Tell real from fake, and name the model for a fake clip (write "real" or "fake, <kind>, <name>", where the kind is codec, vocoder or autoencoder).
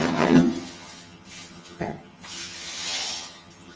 fake, vocoder, HiFi-GAN